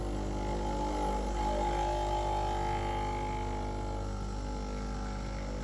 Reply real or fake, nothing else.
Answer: real